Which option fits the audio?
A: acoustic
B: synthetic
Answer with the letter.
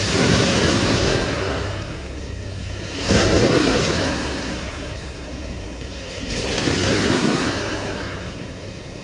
B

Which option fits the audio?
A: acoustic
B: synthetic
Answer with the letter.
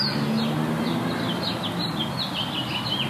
A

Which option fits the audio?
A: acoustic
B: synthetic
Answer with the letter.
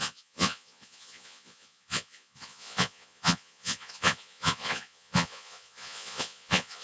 B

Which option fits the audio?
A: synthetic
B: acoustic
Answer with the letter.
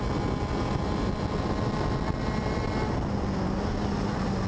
B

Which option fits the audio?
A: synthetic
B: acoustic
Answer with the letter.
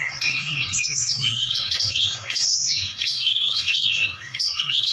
A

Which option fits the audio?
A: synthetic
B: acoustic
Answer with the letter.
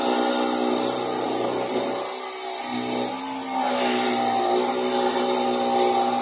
B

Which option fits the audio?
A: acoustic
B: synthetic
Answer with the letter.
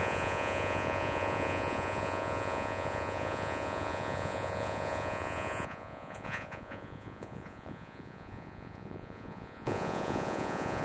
B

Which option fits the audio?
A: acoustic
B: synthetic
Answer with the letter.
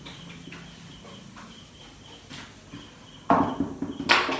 A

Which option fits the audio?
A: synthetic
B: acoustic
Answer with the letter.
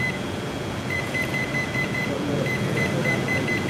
A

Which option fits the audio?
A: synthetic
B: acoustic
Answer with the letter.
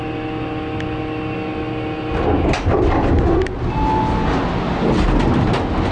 B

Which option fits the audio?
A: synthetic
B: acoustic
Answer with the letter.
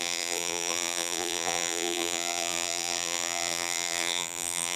A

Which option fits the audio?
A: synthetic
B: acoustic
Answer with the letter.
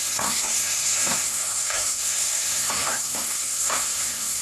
A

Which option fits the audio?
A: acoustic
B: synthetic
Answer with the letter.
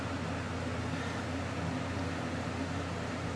A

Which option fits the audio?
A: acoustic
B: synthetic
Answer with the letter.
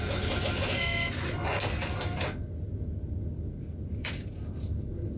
A